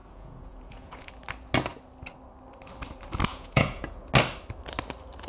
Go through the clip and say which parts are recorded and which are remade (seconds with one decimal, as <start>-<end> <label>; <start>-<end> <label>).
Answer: 0.0-1.1 remade; 1.1-3.3 recorded; 3.3-4.1 remade; 4.1-5.3 recorded